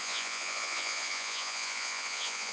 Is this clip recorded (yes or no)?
no